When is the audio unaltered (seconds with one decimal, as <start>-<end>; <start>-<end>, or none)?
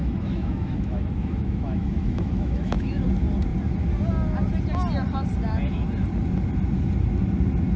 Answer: 3.0-7.8